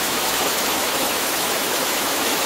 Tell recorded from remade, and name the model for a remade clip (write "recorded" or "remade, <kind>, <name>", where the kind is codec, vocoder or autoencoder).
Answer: remade, autoencoder, DAC-VAE